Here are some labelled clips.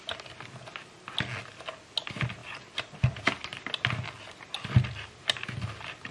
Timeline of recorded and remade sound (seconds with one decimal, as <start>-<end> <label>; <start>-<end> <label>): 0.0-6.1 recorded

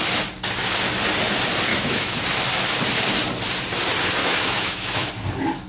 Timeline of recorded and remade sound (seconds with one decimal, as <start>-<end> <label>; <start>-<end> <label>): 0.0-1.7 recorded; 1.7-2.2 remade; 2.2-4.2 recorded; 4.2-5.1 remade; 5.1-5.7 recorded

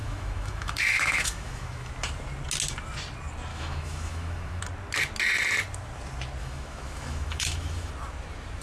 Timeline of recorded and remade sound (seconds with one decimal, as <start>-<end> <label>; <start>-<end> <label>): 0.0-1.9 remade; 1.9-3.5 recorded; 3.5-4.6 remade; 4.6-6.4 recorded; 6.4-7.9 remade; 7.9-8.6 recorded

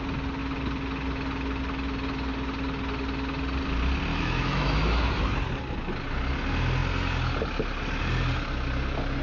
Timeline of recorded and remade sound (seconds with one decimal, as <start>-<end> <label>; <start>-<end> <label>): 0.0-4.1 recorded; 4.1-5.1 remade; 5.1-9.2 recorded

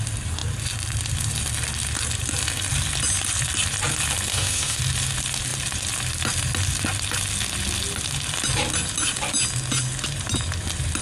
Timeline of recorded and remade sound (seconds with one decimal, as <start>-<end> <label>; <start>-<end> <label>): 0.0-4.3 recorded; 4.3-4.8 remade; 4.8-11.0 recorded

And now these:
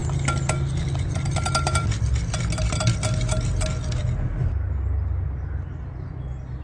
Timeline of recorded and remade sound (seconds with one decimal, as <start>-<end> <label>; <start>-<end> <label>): 0.0-6.6 recorded

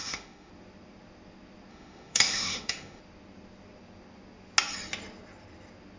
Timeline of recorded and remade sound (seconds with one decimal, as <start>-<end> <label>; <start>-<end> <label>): 0.0-0.5 remade; 0.5-1.7 recorded; 1.7-3.0 remade; 3.0-6.0 recorded

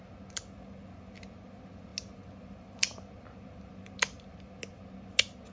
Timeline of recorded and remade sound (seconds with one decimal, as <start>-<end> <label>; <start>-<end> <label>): 0.0-5.5 recorded